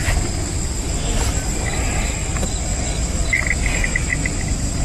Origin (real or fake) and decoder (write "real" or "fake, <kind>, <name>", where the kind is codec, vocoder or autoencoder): real